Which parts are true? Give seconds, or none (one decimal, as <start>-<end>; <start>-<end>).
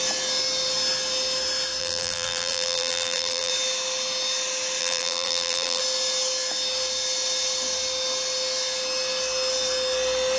0.0-1.8; 3.5-4.8; 5.8-10.4